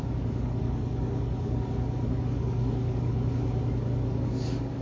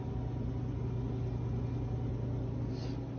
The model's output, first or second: first